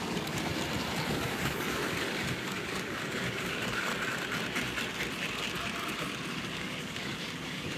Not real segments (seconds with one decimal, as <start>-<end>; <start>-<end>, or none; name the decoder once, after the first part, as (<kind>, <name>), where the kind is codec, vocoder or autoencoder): 0.0-0.5 (codec, DAC); 1.1-3.9; 6.3-7.8